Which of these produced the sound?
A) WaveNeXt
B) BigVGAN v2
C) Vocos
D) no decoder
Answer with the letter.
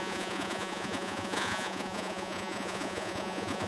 C